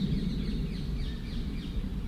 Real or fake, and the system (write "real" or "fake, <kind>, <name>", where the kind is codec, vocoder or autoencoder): real